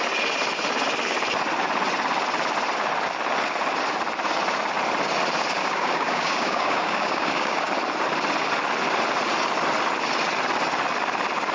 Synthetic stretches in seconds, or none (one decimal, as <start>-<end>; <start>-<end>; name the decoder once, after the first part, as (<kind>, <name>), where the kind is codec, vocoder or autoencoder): 5.6-7.7 (codec, DAC)